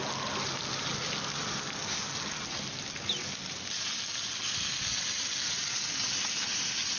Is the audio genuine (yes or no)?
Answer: yes